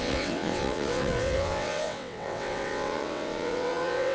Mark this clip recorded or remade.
remade